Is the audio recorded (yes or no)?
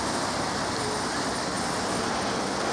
yes